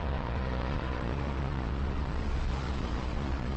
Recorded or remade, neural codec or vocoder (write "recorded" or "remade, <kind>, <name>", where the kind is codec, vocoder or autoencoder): remade, vocoder, Vocos